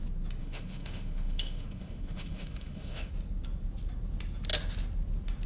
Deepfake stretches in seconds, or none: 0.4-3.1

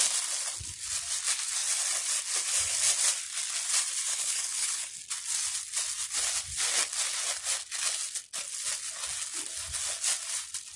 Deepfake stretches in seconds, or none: 4.1-4.8